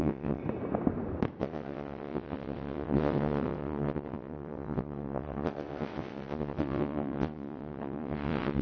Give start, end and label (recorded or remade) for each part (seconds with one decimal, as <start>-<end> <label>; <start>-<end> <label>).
0.0-0.4 remade; 0.4-1.4 recorded; 1.4-8.6 remade